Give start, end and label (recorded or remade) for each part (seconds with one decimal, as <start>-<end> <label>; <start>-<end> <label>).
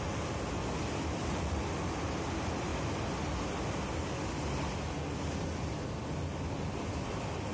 0.0-7.5 recorded